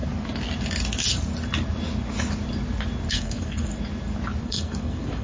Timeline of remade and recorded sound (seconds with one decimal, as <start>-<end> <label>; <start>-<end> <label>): 0.0-3.1 recorded; 3.1-3.7 remade; 3.7-4.4 recorded; 4.4-5.2 remade